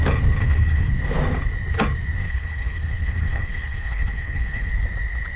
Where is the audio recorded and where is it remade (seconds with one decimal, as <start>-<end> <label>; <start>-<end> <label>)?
0.0-0.4 recorded; 0.4-0.9 remade; 0.9-2.2 recorded; 2.2-4.7 remade; 4.7-5.4 recorded